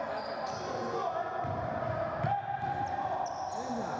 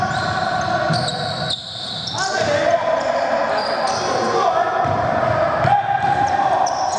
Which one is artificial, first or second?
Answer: second